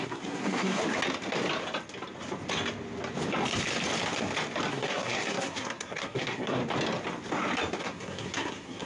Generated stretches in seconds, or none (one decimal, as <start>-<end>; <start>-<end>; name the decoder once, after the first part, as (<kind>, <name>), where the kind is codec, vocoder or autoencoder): 0.0-0.8 (codec, SNAC); 4.7-6.6; 7.8-8.9